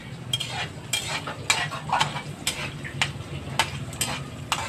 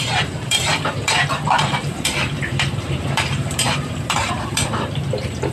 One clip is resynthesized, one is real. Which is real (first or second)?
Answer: first